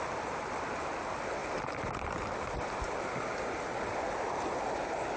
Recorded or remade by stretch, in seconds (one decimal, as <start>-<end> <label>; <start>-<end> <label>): 0.0-5.2 recorded